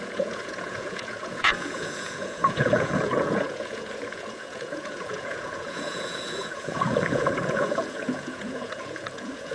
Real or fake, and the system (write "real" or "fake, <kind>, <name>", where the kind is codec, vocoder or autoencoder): fake, vocoder, Vocos